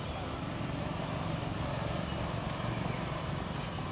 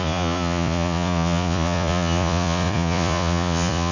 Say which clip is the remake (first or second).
second